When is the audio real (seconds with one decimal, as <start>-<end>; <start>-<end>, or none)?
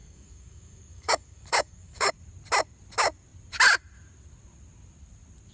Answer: 2.1-5.5